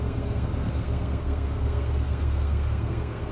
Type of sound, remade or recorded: remade